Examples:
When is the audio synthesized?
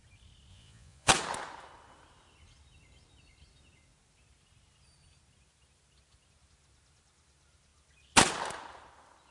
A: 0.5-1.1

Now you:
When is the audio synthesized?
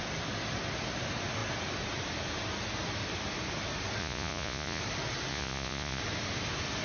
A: 4.0-4.8; 5.3-6.0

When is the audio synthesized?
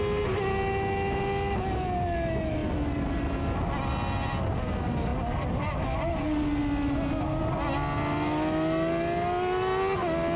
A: none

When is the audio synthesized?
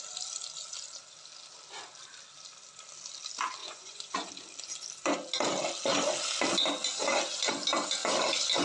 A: 3.6-4.3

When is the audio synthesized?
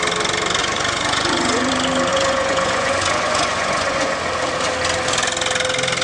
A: 0.6-1.7; 2.1-4.1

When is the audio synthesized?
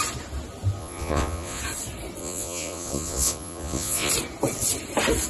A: 0.8-1.6; 2.2-4.1